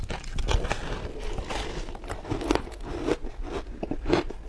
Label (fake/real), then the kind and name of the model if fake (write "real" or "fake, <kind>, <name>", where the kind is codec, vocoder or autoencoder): real